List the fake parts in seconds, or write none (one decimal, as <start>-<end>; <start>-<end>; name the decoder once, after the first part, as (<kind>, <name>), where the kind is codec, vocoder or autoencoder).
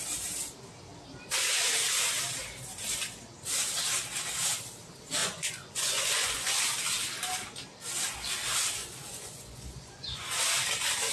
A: 5.2-6.6 (vocoder, Vocos); 8.8-10.2